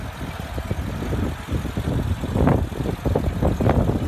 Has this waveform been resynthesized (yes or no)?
no